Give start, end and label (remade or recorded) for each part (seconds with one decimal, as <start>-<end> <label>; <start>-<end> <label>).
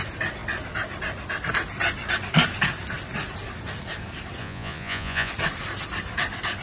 0.0-4.4 recorded; 4.4-5.3 remade; 5.3-6.6 recorded